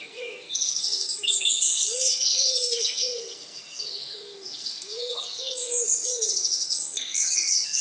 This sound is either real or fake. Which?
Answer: fake